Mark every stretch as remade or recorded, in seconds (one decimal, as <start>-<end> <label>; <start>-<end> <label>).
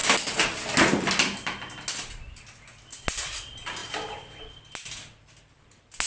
0.0-6.1 recorded